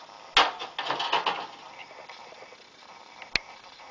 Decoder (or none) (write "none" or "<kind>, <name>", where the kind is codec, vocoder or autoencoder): none